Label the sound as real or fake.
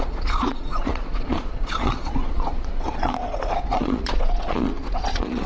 fake